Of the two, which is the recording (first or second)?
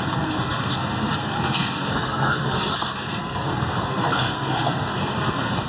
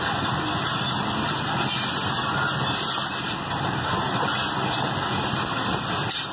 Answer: second